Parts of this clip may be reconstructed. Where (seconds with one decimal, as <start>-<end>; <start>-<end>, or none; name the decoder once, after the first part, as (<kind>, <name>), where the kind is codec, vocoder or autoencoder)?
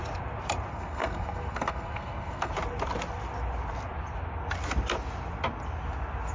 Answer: 0.7-2.5 (codec, SNAC)